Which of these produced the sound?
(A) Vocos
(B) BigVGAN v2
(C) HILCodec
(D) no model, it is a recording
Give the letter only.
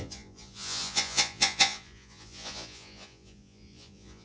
A